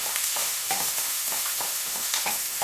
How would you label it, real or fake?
fake